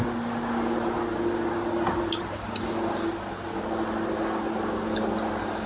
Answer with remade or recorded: recorded